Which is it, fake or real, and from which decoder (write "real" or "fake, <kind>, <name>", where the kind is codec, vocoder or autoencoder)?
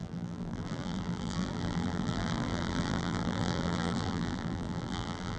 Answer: fake, vocoder, BigVGAN v2